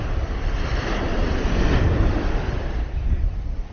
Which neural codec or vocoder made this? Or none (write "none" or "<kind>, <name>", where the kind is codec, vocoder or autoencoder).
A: vocoder, BigVGAN v2